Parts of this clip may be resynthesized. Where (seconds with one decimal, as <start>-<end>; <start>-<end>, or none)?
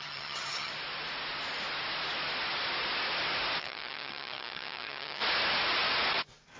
0.0-0.7; 3.6-5.2